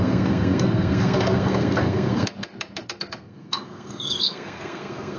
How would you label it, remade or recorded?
remade